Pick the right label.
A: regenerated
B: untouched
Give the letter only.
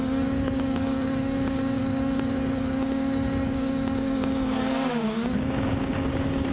A